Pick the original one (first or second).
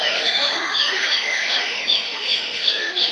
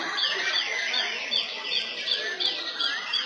second